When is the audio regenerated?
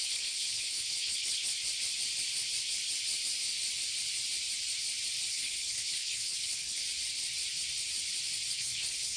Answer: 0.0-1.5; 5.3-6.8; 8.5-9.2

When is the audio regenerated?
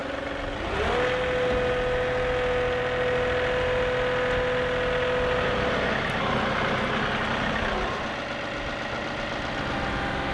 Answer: none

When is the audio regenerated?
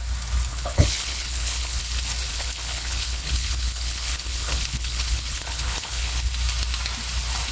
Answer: 0.5-1.8; 2.3-6.3